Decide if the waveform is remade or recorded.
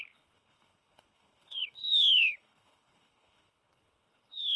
remade